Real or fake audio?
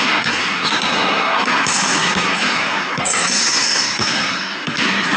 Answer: fake